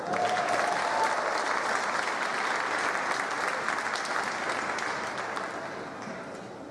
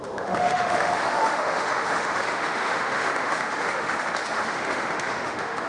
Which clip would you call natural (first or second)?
first